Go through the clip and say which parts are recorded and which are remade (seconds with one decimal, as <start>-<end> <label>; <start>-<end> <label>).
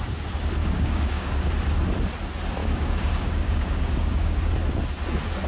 0.0-0.6 recorded; 0.6-1.5 remade; 1.5-2.6 recorded; 2.6-4.5 remade; 4.5-5.5 recorded